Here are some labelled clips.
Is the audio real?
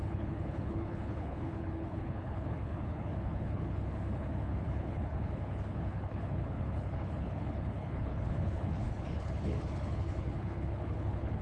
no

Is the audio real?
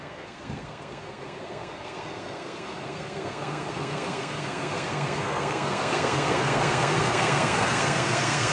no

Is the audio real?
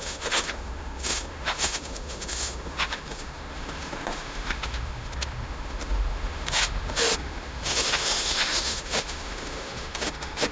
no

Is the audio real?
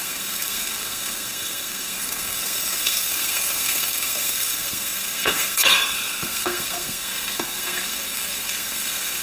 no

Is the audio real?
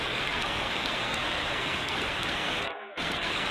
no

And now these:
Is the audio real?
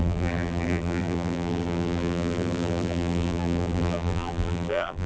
no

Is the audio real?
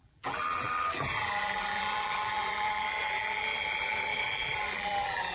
no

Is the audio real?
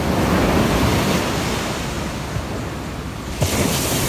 yes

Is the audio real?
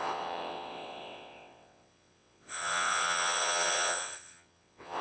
no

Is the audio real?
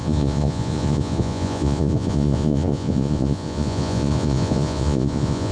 no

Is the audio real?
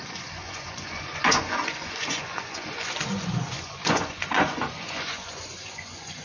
no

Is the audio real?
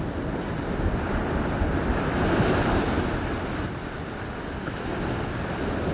yes